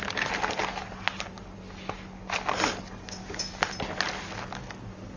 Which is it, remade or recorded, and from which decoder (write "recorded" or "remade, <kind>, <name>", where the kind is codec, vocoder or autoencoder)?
recorded